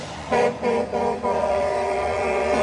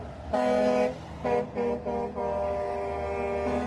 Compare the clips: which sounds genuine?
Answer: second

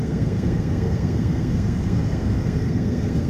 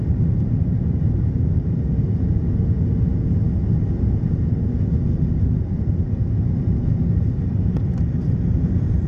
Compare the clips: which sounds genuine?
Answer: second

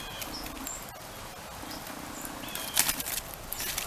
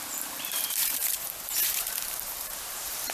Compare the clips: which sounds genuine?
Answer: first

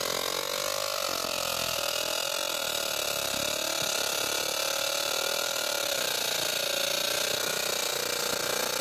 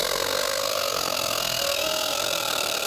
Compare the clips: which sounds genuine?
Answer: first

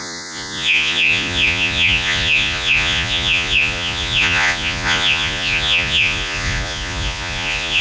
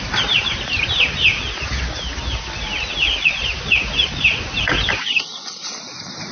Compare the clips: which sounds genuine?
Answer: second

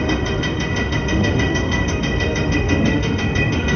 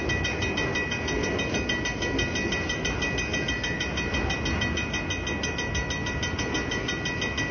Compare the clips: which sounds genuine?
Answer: second